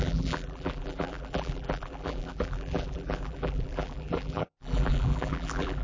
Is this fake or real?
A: fake